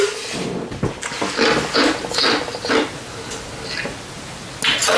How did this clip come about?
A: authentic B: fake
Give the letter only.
A